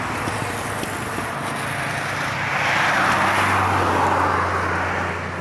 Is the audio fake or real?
real